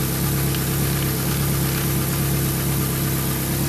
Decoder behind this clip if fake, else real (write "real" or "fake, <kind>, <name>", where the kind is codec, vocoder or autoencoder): real